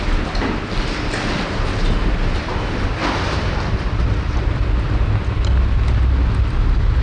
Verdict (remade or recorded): recorded